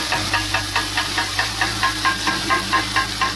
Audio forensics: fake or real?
real